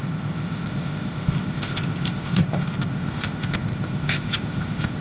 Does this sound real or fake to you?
fake